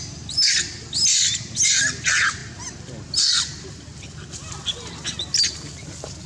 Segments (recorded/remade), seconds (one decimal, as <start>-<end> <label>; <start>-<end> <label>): 0.0-6.3 recorded